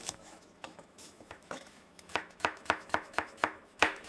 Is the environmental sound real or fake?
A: fake